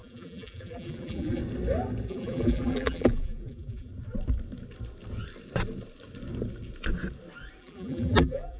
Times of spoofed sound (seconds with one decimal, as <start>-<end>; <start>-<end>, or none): 0.0-1.4; 2.1-3.9; 7.6-8.6